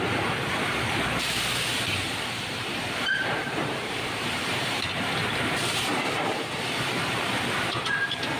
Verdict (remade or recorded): remade